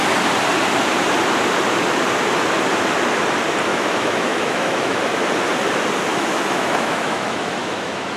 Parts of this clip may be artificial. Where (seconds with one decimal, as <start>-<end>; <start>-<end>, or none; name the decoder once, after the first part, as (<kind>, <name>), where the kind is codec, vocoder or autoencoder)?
3.7-5.0 (autoencoder, DAC-VAE); 6.1-8.2